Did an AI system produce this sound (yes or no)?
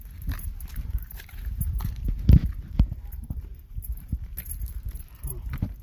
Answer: yes